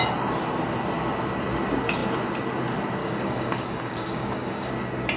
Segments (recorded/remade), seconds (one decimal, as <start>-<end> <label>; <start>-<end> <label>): 0.0-3.0 recorded; 3.0-4.7 remade; 4.7-5.2 recorded